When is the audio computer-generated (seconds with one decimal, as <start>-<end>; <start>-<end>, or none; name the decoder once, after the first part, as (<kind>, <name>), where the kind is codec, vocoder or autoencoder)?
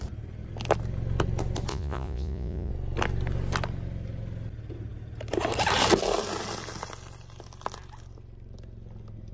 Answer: 1.7-2.7 (vocoder, Vocos)